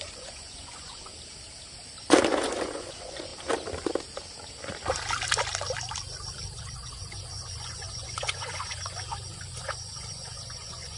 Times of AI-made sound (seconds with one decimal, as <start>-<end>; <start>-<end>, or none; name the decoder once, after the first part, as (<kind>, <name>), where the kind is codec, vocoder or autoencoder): 0.0-1.1 (vocoder, Vocos); 2.3-3.3; 6.6-11.0